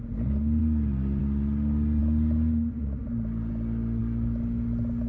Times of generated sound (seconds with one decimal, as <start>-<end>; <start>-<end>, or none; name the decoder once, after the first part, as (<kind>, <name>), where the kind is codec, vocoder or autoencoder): none